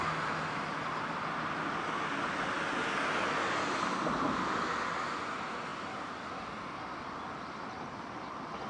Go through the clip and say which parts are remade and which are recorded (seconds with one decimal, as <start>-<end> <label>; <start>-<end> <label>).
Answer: 0.0-8.7 recorded